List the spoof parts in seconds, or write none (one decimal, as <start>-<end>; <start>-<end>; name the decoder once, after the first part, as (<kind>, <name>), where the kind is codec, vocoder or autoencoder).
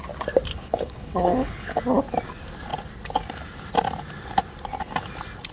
0.5-1.8 (codec, HILCodec)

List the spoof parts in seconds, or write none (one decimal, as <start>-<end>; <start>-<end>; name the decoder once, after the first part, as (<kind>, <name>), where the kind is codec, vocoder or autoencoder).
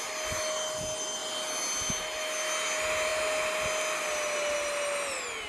none